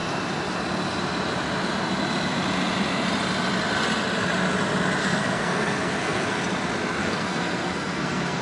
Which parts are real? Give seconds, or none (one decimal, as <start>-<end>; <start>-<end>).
0.0-5.0; 6.4-7.0